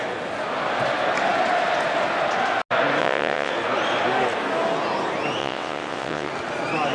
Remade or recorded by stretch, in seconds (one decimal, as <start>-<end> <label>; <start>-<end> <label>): 0.0-3.0 recorded; 3.0-3.5 remade; 3.5-5.4 recorded; 5.4-6.3 remade; 6.3-6.9 recorded